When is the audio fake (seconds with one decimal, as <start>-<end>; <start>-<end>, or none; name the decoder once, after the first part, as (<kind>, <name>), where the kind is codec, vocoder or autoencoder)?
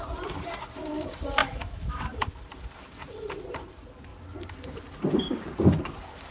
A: 1.4-2.3 (autoencoder, DAC-VAE)